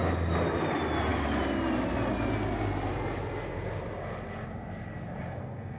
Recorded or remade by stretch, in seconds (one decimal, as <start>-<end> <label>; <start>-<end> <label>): 0.0-5.2 recorded; 5.2-5.8 remade